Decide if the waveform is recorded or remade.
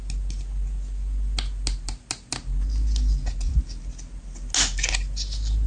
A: recorded